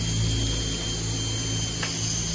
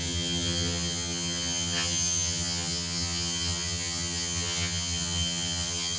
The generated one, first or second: second